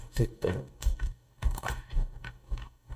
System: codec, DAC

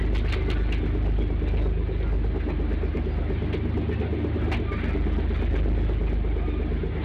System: none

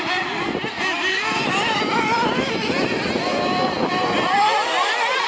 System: none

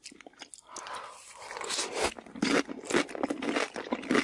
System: none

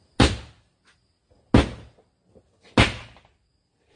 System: none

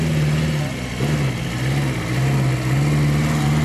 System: none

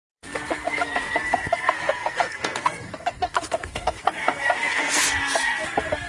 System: codec, SNAC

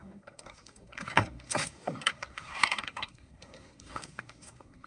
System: codec, SNAC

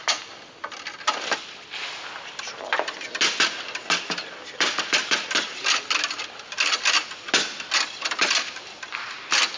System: none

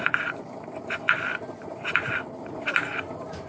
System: none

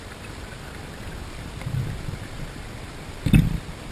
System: vocoder, BigVGAN v2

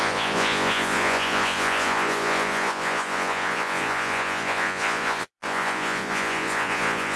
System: vocoder, Vocos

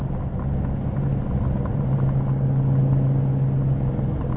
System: none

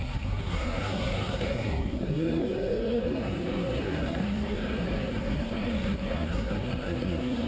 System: codec, SNAC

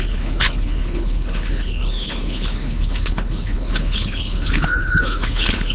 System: codec, HILCodec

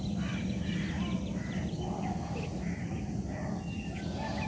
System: none